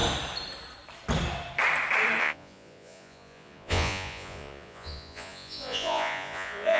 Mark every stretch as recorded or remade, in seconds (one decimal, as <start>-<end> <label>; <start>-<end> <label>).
0.0-2.2 recorded; 2.2-6.8 remade